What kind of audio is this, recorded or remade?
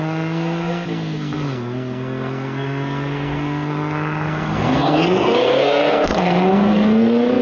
remade